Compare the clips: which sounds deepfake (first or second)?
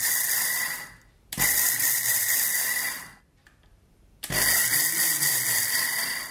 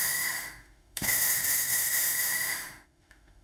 second